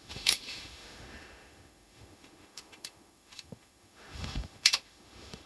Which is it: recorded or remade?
remade